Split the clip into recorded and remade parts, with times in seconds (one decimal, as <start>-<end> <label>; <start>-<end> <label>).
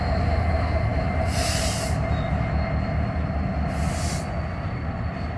0.0-5.4 recorded